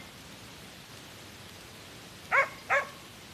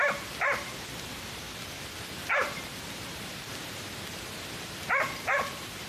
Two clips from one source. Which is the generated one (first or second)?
second